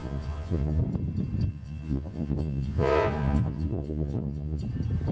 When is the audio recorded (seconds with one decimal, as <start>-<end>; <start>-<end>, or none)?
0.8-1.5; 4.6-5.1